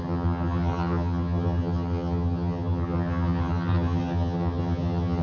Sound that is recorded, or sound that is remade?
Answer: remade